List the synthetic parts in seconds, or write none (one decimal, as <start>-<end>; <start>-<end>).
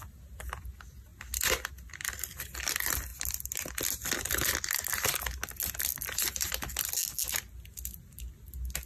none